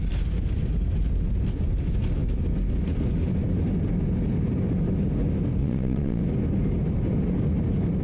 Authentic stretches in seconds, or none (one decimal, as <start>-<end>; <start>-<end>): 0.0-5.6; 6.2-8.0